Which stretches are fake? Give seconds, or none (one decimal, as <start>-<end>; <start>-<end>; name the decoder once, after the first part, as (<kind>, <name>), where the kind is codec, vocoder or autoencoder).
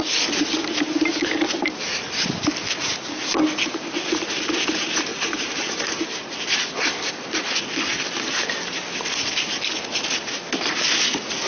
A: 5.1-6.7 (vocoder, BigVGAN v2)